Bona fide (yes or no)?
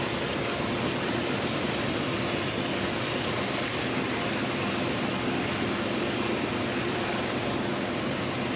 yes